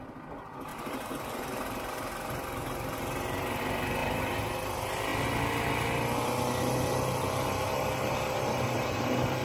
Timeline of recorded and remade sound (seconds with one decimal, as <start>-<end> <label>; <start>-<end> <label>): 0.0-0.7 recorded; 0.7-3.6 remade; 3.6-4.0 recorded; 4.0-4.5 remade; 4.5-9.4 recorded